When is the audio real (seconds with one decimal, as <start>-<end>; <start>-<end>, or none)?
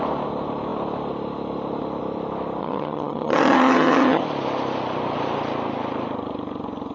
0.0-2.6; 4.2-6.9